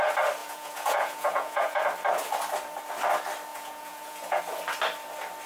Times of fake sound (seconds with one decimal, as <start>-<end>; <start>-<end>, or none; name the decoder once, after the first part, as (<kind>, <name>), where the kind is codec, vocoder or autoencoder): 0.4-1.8 (vocoder, Vocos); 3.5-4.4